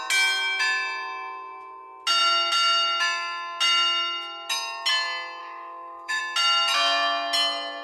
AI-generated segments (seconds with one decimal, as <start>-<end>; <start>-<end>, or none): 5.4-6.2